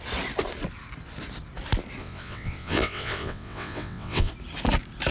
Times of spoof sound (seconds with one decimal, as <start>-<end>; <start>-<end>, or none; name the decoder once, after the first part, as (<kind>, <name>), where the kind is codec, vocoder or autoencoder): 2.0-4.3 (vocoder, WaveNeXt)